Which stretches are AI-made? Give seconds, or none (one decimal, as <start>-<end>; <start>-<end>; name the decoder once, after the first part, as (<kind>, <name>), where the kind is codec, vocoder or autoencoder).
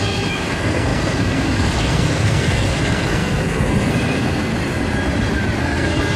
0.0-4.5 (codec, SNAC); 5.6-6.2